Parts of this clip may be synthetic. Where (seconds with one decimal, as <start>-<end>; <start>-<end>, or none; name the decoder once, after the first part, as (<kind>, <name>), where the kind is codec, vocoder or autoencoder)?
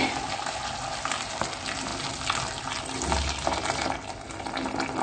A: none